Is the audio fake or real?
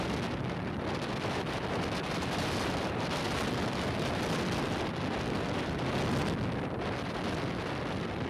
real